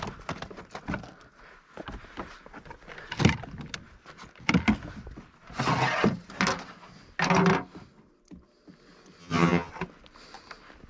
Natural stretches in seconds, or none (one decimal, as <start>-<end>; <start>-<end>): 0.0-9.2; 9.7-10.9

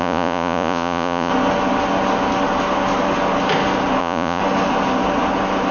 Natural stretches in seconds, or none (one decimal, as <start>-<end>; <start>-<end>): 1.3-4.0; 4.4-5.7

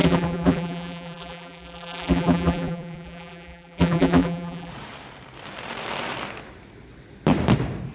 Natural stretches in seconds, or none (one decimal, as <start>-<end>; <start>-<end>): 4.7-7.9